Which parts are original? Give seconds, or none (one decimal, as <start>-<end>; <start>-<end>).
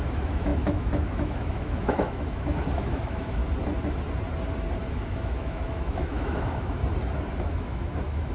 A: 3.4-4.9; 6.8-7.4